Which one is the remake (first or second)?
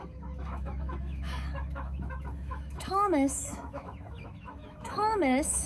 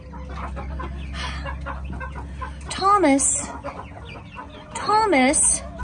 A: first